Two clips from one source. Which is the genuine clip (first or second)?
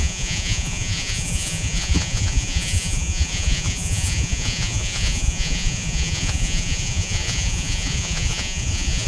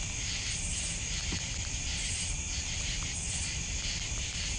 second